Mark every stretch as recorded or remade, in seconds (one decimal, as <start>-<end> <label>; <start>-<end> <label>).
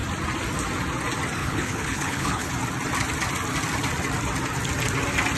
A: 0.0-1.4 recorded; 1.4-2.5 remade; 2.5-5.4 recorded